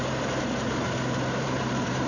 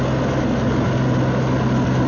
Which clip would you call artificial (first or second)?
first